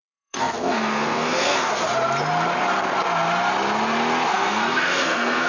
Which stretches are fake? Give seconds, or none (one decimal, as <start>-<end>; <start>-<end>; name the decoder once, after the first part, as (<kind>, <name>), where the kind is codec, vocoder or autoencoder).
0.0-1.7 (codec, SNAC); 4.3-5.5